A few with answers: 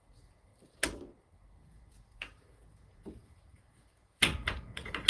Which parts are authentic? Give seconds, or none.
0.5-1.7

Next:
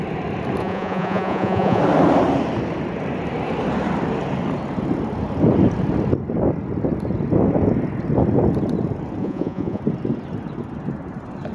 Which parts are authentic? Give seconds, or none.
0.0-0.6; 1.8-9.2; 9.8-11.5

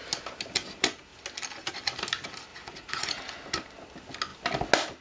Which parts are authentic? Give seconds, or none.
0.0-2.5; 3.2-5.0

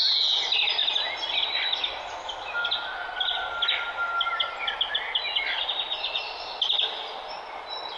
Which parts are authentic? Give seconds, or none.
0.0-8.0